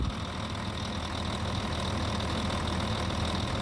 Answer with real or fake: real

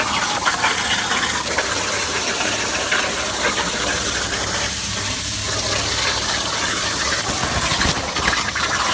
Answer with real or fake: real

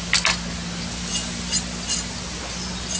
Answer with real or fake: real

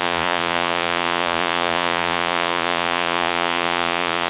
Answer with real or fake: fake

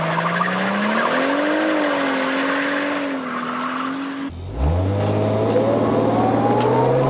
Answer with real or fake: real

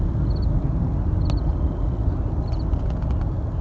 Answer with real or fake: real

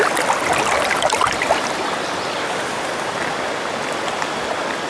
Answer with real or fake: real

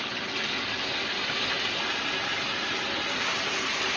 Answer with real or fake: real